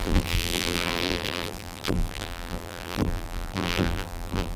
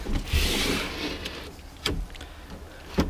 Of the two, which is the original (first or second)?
second